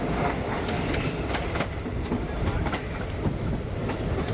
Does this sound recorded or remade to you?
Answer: recorded